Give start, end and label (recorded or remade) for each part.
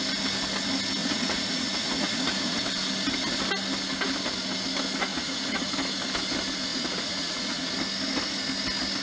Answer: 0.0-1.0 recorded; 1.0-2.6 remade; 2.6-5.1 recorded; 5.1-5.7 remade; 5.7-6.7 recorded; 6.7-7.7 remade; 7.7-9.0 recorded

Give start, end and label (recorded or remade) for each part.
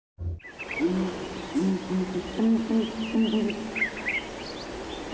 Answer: 0.0-5.1 recorded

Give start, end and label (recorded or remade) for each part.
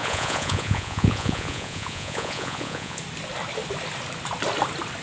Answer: 0.0-3.0 remade; 3.0-5.0 recorded